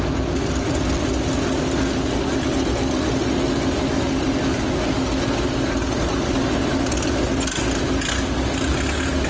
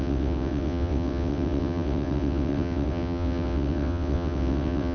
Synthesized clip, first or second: second